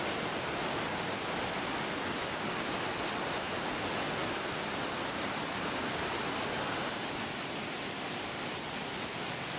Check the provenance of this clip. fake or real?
real